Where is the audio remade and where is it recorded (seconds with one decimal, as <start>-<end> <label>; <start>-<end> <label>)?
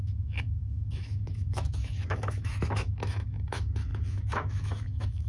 0.0-5.3 remade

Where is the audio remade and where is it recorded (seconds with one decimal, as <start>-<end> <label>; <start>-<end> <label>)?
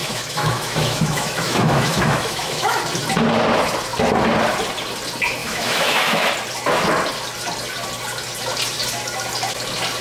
0.0-2.8 remade; 2.8-5.4 recorded; 5.4-6.3 remade; 6.3-10.0 recorded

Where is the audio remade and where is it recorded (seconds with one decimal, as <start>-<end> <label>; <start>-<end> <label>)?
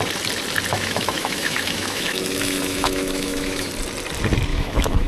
0.0-0.7 recorded; 0.7-3.7 remade; 3.7-4.5 recorded; 4.5-5.1 remade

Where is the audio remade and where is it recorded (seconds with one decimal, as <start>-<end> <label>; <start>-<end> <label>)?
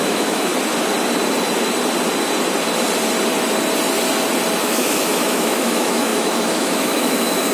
0.0-0.5 remade; 0.5-4.6 recorded; 4.6-7.5 remade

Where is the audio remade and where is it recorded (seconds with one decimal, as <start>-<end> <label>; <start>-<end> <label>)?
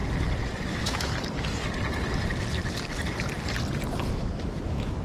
0.0-0.7 recorded; 0.7-1.1 remade; 1.1-4.1 recorded; 4.1-5.0 remade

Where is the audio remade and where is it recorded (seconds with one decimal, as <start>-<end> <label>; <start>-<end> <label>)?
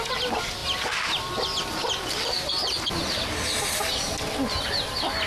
0.0-5.3 recorded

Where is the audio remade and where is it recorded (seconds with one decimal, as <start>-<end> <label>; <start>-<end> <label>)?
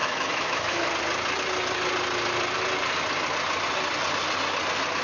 0.0-0.9 remade; 0.9-5.0 recorded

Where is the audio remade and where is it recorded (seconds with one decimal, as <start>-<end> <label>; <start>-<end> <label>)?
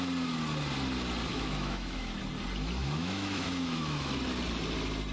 0.0-1.3 recorded; 1.3-2.2 remade; 2.2-2.8 recorded; 2.8-4.2 remade; 4.2-5.1 recorded